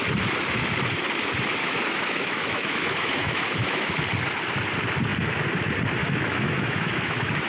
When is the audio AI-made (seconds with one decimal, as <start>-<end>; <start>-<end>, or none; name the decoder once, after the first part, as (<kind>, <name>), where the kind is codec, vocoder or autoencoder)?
1.6-3.9 (autoencoder, DAC-VAE); 6.0-7.5